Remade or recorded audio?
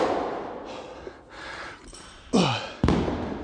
recorded